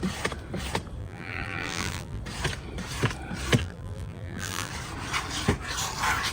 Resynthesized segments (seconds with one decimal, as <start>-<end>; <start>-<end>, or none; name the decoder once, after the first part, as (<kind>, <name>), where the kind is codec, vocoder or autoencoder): 1.0-2.2 (vocoder, BigVGAN v2); 3.6-4.7